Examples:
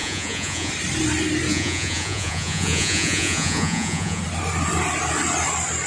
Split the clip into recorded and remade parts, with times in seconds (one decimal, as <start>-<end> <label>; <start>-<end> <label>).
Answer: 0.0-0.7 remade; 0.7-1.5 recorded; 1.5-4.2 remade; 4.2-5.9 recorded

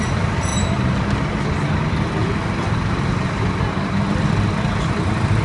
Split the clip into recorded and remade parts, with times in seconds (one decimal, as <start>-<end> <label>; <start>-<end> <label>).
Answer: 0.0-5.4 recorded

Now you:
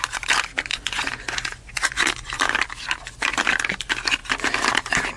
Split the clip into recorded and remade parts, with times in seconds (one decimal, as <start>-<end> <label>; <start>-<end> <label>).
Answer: 0.0-0.7 recorded; 0.7-2.4 remade; 2.4-5.2 recorded